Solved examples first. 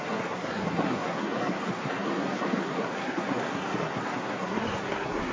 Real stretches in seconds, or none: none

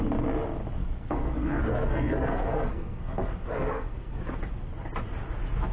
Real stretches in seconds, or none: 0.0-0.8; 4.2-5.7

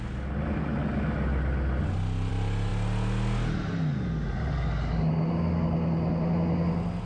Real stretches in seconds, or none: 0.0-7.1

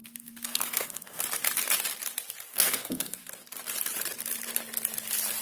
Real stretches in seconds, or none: 1.2-2.5; 3.2-5.4

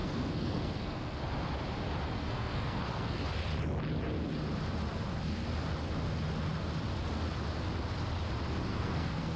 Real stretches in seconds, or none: 1.2-2.2; 3.2-8.7